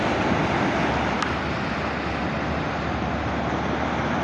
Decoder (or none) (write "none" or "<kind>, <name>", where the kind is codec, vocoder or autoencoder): none